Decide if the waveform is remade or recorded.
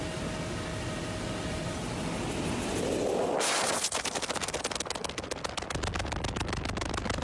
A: recorded